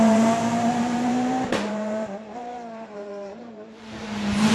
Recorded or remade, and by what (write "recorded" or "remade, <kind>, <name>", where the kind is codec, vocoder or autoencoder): remade, vocoder, BigVGAN v2